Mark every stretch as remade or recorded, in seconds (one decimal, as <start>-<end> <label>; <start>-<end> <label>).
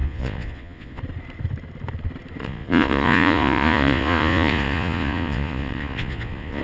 0.0-1.0 remade; 1.0-2.4 recorded; 2.4-6.6 remade